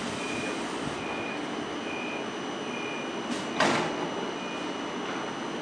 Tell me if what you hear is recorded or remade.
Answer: recorded